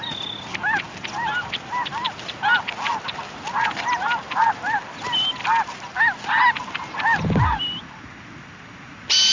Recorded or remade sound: recorded